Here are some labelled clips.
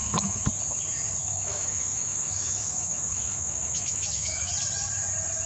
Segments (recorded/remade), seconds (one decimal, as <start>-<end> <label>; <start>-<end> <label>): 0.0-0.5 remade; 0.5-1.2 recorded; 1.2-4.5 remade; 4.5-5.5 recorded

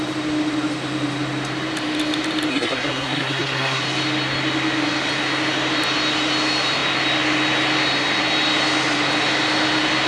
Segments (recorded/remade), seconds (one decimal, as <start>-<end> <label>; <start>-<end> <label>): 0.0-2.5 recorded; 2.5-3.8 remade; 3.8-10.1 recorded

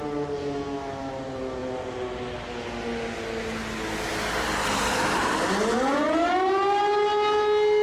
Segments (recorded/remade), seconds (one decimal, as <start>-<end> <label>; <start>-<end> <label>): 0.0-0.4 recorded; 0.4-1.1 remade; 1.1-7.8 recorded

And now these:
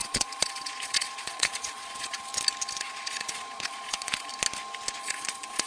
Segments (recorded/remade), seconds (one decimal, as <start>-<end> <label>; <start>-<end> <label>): 0.0-2.3 remade; 2.3-2.8 recorded; 2.8-4.3 remade; 4.3-5.0 recorded; 5.0-5.7 remade